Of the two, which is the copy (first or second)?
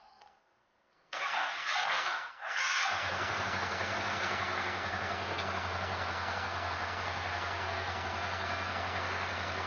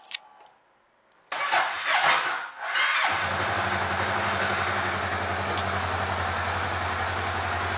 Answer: first